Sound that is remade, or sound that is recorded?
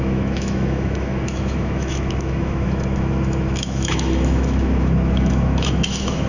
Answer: remade